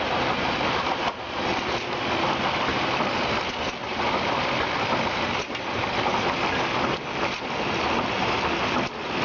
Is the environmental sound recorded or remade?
recorded